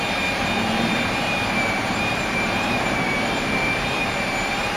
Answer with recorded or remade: remade